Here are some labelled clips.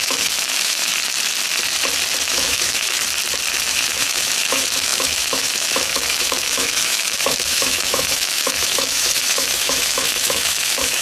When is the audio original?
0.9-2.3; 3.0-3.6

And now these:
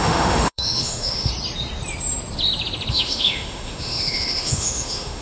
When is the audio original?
1.3-2.9